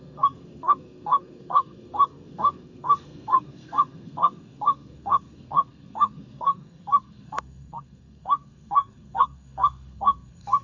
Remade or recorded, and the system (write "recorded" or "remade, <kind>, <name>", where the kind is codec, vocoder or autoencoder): remade, codec, SNAC